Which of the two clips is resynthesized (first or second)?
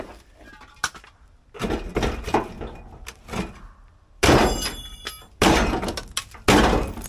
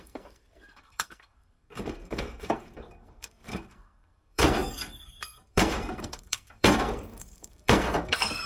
second